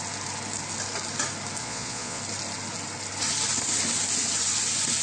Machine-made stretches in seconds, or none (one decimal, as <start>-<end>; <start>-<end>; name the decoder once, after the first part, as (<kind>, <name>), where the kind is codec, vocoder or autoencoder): 1.6-2.2 (vocoder, Vocos)